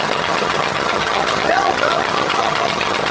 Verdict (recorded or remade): remade